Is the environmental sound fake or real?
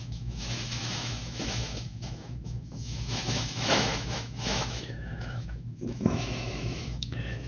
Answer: fake